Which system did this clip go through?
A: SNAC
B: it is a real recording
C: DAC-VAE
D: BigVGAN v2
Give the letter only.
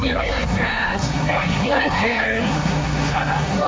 A